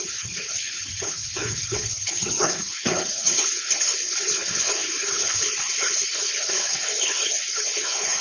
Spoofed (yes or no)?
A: yes